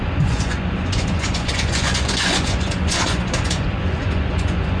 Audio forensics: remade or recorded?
remade